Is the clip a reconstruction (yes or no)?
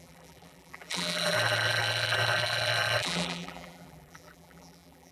yes